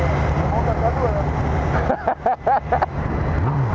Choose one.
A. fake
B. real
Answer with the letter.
B